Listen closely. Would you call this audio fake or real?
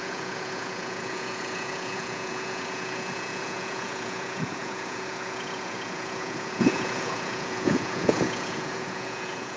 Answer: fake